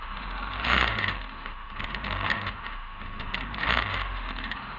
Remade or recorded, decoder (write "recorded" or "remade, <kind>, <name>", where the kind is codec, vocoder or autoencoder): remade, autoencoder, DAC-VAE